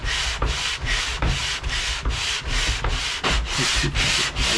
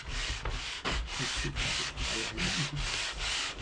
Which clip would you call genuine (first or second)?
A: first